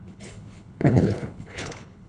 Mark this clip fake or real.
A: fake